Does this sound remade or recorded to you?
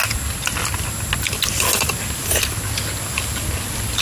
recorded